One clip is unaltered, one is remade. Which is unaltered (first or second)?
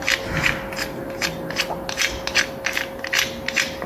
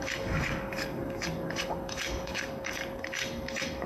first